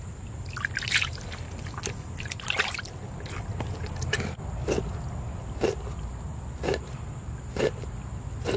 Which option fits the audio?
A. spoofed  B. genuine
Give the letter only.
B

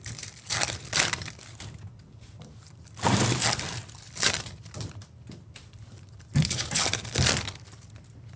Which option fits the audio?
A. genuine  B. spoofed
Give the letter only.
B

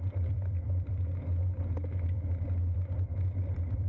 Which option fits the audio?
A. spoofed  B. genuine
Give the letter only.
A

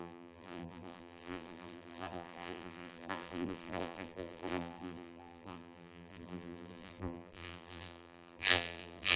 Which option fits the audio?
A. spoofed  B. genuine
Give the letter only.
A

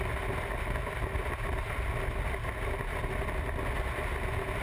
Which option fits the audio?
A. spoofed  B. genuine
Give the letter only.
B